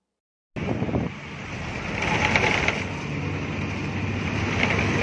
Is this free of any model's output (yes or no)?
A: yes